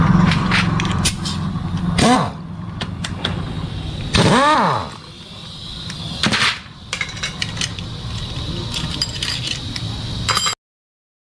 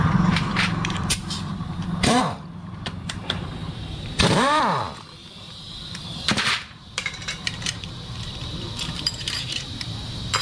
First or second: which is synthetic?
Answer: second